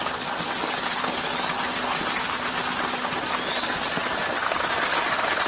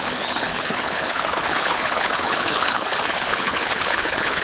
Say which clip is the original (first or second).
first